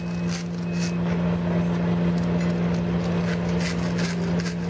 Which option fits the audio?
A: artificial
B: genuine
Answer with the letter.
B